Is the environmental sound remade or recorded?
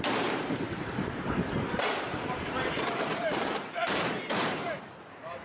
remade